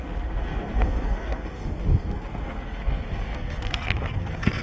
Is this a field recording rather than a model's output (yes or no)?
no